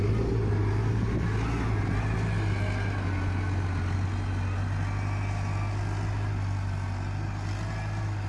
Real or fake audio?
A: real